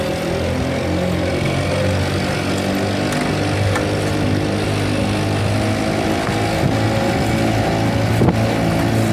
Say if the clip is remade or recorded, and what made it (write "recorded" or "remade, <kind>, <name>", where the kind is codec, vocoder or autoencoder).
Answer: recorded